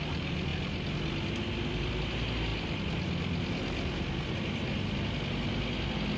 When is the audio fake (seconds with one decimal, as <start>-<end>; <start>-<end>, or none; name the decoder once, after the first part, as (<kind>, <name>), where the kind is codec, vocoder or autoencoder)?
none